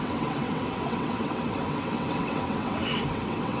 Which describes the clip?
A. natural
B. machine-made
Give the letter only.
B